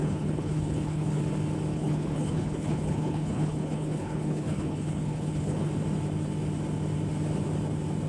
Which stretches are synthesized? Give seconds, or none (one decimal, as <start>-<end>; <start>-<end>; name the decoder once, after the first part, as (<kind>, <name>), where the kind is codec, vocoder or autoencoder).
0.0-1.2 (codec, HILCodec); 1.7-5.7

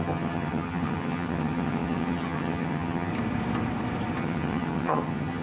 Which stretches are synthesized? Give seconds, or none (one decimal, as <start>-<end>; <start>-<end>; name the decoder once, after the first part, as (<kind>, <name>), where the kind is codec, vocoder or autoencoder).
0.0-3.1 (vocoder, HiFi-GAN); 4.2-5.4

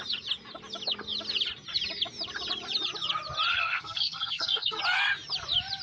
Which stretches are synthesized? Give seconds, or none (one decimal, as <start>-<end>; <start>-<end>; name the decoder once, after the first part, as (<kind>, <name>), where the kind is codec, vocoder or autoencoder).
3.5-4.8 (codec, SNAC)

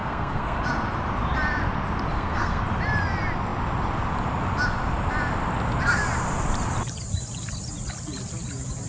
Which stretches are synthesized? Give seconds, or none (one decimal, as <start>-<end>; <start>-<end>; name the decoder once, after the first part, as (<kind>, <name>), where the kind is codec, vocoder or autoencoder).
0.0-0.6 (codec, SNAC); 2.1-2.6

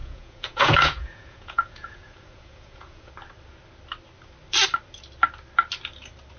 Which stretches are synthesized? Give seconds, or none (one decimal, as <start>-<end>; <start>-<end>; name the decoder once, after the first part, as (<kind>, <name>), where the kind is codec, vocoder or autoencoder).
0.0-3.1 (vocoder, Vocos)